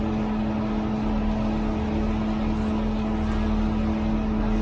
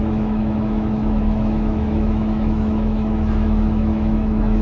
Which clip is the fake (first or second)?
second